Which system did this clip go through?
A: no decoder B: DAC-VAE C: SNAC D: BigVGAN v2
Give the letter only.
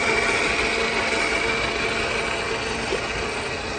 A